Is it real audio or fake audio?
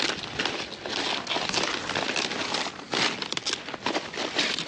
real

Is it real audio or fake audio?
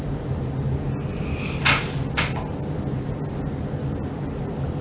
real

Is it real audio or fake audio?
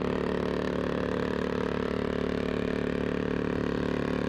real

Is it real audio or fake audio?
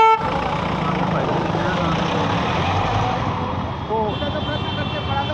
real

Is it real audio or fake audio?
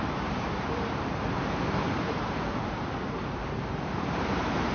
fake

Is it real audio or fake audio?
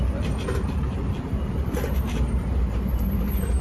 fake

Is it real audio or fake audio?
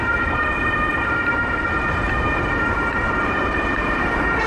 fake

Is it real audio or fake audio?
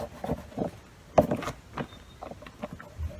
real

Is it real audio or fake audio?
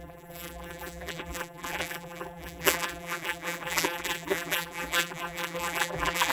fake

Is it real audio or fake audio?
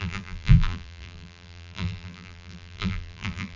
fake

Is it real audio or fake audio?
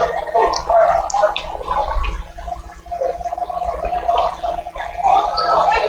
real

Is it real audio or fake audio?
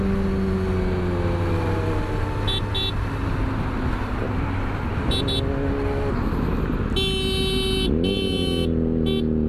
real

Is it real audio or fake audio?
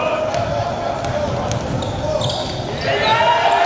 real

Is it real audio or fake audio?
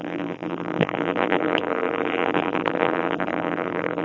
fake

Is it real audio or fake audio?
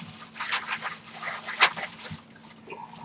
real